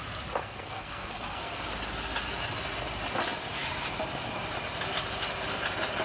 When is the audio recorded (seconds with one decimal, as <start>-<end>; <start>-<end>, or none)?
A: 0.0-0.4; 1.6-6.0